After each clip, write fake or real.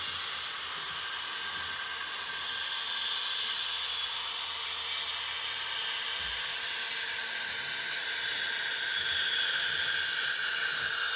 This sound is real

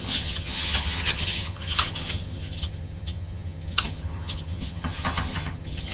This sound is fake